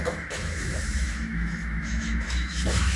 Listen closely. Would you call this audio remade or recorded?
remade